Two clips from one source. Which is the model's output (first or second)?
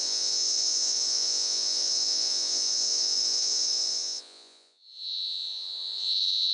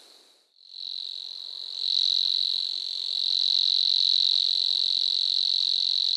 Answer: first